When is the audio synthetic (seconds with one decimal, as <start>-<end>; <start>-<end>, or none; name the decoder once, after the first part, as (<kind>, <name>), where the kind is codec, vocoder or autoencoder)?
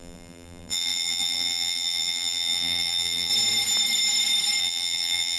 0.0-3.3 (vocoder, BigVGAN v2); 4.6-5.4